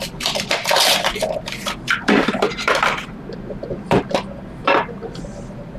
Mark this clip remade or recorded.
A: remade